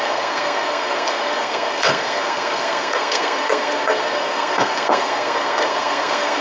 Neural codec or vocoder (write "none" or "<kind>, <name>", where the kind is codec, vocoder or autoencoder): codec, SNAC